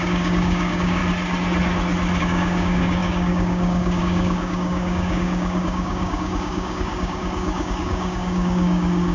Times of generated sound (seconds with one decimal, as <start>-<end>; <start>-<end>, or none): 0.0-1.0; 2.2-9.1